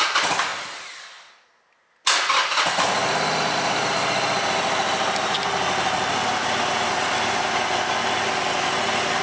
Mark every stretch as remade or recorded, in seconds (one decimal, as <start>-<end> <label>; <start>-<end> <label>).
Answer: 0.0-9.2 recorded